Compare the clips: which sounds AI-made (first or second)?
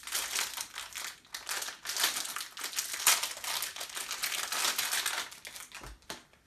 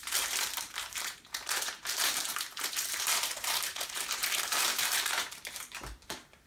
second